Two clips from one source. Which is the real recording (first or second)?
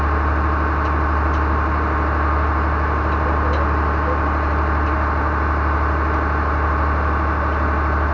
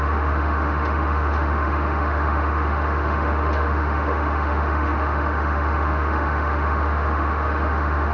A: first